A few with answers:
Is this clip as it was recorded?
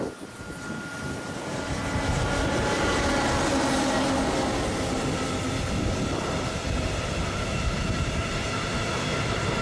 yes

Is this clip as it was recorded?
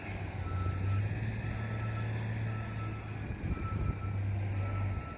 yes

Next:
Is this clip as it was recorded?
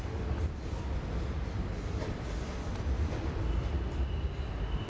yes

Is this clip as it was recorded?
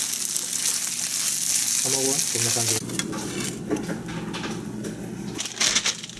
yes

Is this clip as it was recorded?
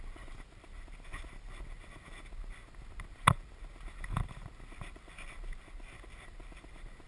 yes